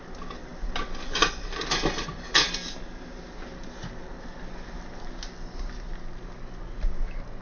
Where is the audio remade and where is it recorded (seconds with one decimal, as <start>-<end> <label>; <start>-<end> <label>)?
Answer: 0.0-7.4 recorded